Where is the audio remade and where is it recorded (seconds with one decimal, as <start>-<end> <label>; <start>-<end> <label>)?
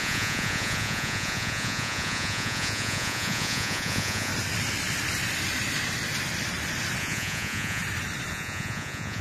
0.0-4.3 remade; 4.3-7.0 recorded; 7.0-7.8 remade; 7.8-8.3 recorded; 8.3-9.2 remade